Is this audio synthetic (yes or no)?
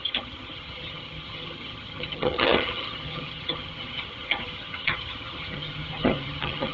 yes